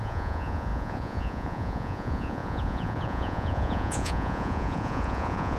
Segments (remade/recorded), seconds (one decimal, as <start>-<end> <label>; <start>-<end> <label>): 0.0-5.6 remade